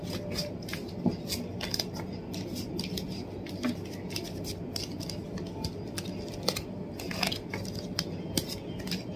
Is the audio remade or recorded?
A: recorded